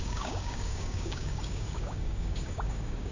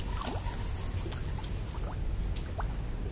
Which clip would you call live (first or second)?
second